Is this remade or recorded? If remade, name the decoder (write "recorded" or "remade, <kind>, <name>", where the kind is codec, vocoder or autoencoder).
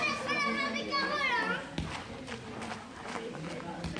recorded